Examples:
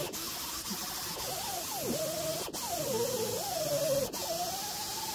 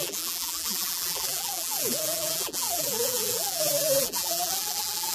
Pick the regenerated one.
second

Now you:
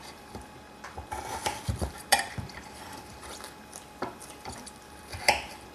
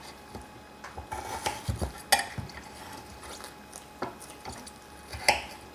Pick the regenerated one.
first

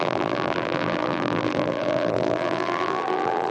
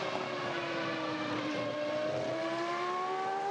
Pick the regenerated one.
first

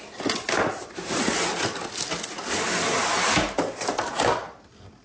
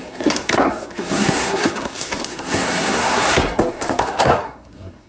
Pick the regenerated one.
second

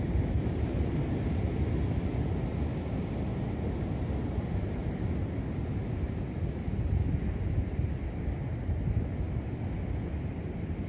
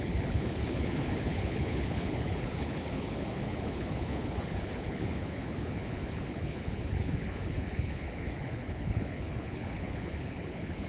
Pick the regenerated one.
second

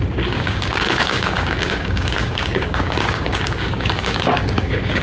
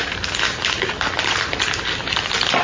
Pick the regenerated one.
first